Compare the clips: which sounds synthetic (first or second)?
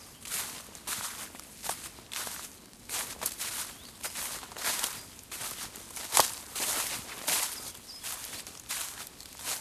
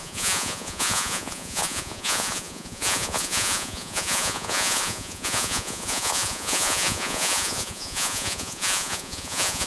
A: second